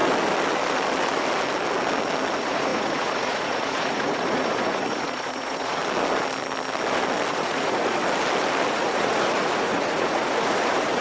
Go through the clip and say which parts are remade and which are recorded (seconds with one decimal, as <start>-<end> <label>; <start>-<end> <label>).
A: 0.0-2.3 recorded; 2.3-5.8 remade; 5.8-7.3 recorded; 7.3-8.0 remade; 8.0-8.7 recorded; 8.7-11.0 remade